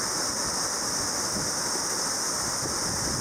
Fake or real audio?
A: real